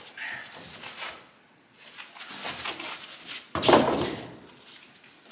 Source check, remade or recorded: recorded